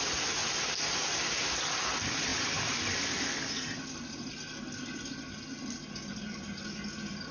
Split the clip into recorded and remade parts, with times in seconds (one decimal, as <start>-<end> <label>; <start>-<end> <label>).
0.0-7.3 recorded